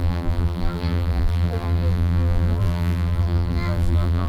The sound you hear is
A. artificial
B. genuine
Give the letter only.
A